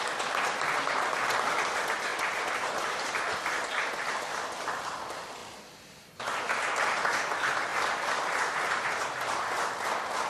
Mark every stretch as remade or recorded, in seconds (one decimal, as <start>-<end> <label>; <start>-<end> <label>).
0.0-10.3 recorded